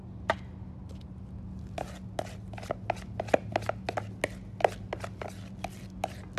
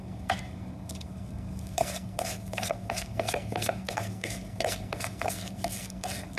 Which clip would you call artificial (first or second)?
second